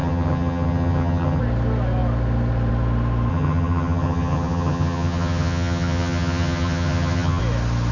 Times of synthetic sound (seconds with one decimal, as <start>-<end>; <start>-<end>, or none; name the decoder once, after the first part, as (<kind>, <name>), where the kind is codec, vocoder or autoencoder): 0.0-1.4 (vocoder, HiFi-GAN); 3.3-7.4